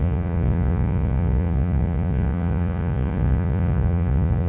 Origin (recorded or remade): remade